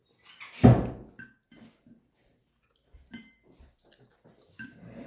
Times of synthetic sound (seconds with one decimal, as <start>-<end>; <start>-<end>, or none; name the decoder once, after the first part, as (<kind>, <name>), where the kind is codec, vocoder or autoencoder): 1.1-5.1 (vocoder, BigVGAN v2)